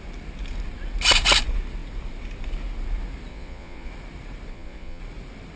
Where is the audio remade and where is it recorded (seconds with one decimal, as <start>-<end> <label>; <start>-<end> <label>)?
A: 0.0-3.3 recorded; 3.3-3.9 remade; 3.9-4.5 recorded; 4.5-5.0 remade; 5.0-5.6 recorded